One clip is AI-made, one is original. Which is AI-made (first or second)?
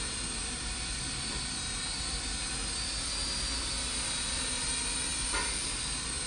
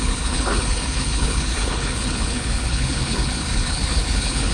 second